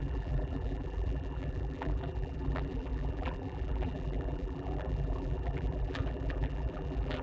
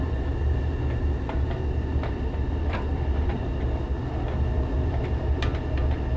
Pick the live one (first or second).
second